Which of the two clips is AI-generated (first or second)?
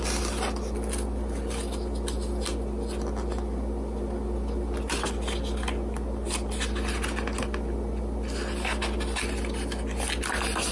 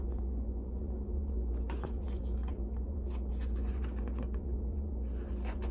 second